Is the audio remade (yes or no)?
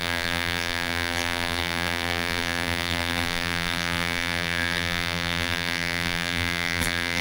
yes